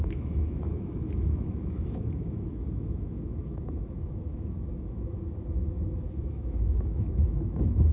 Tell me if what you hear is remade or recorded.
remade